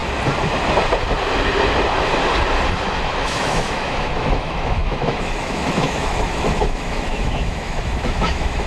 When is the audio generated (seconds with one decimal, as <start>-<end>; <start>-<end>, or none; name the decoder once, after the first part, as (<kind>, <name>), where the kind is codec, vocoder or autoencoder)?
3.0-8.7 (autoencoder, DAC-VAE)